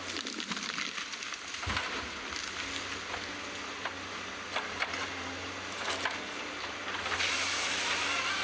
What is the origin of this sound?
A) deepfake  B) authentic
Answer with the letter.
B